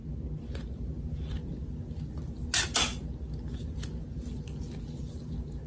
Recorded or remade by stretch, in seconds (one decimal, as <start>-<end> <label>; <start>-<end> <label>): 0.0-5.7 recorded